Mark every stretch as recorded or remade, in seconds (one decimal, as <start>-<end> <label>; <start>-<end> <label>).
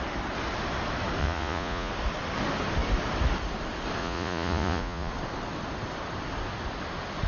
0.0-1.2 recorded; 1.2-1.9 remade; 1.9-4.0 recorded; 4.0-5.1 remade; 5.1-7.3 recorded